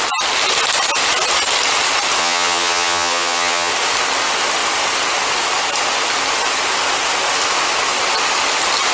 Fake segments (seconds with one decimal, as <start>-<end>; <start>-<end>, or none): 2.2-3.7

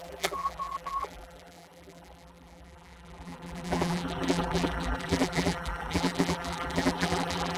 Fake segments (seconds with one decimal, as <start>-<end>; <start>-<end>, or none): 0.0-7.6

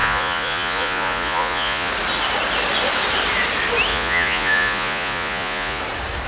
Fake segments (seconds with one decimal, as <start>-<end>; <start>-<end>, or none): 0.0-1.9; 3.9-5.8

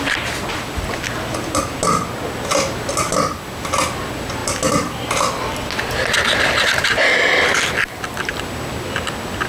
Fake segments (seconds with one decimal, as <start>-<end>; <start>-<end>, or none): none

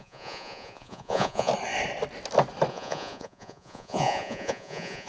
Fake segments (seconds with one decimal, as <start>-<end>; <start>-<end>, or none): 0.0-1.5; 2.7-5.1